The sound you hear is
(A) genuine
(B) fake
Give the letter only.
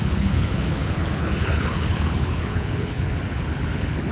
B